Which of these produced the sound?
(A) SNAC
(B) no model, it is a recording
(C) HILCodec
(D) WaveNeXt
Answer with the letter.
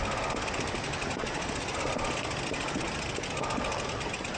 B